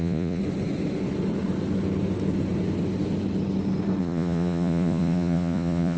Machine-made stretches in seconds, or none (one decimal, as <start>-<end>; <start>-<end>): 0.0-0.4; 4.0-6.0